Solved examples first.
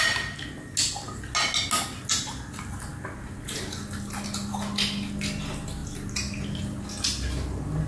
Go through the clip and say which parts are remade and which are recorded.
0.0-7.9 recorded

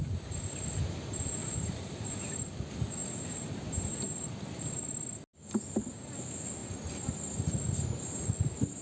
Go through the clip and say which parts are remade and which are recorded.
0.0-1.4 recorded; 1.4-2.2 remade; 2.2-3.0 recorded; 3.0-4.6 remade; 4.6-8.8 recorded

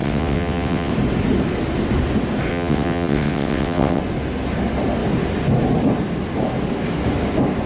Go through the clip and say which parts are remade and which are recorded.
0.0-0.9 remade; 0.9-2.5 recorded; 2.5-4.0 remade; 4.0-7.7 recorded